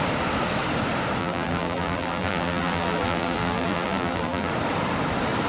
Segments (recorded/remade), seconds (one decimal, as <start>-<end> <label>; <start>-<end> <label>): 0.0-1.2 recorded; 1.2-4.5 remade; 4.5-5.5 recorded